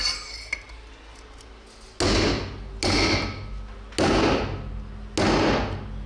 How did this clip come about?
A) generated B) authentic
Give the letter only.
B